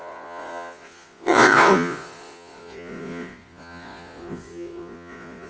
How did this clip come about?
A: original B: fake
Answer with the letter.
B